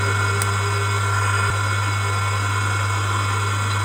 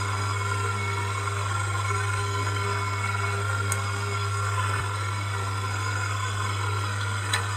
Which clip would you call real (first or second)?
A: first